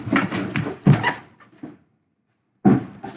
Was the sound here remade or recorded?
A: recorded